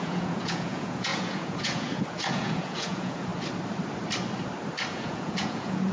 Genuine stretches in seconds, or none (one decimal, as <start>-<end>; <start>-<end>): 3.3-4.9